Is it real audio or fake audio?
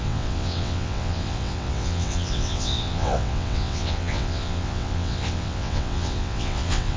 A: fake